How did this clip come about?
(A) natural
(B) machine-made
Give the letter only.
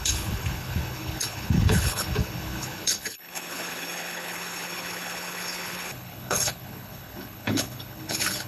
B